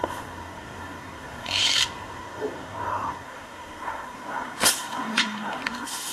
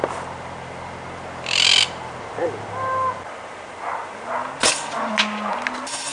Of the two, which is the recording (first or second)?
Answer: second